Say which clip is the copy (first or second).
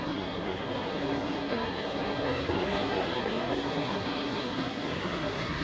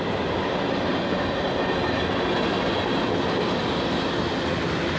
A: first